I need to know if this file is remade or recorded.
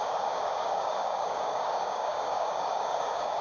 remade